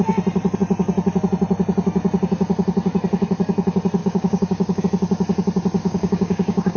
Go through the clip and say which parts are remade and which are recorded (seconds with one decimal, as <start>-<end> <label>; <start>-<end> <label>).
0.0-4.0 recorded; 4.0-4.8 remade; 4.8-5.8 recorded; 5.8-6.8 remade